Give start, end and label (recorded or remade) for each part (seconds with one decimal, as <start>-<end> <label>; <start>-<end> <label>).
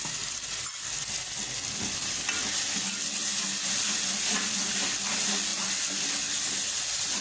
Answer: 0.0-7.2 recorded